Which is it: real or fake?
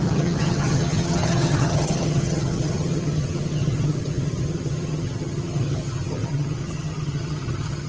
fake